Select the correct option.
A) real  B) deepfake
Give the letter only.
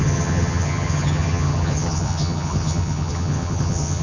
B